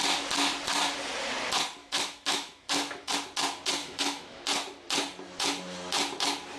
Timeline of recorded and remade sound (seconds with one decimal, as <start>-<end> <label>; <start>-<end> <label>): 0.0-1.8 recorded; 1.8-3.1 remade; 3.1-3.8 recorded; 3.8-4.4 remade; 4.4-6.6 recorded